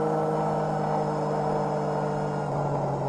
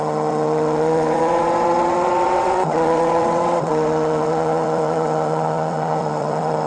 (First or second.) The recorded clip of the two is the first